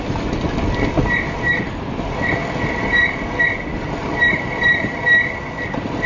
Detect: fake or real real